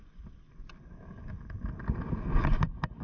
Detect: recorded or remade recorded